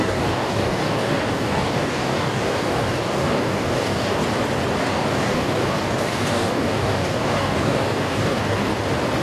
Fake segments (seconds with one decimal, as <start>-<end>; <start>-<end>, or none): 0.0-4.2; 4.8-8.7